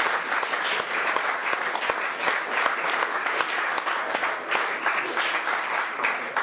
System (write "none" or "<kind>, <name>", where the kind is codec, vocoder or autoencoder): none